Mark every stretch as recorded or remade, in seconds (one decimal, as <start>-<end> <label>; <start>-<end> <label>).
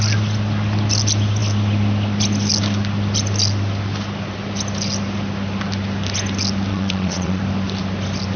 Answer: 0.0-6.7 recorded; 6.7-7.4 remade; 7.4-8.4 recorded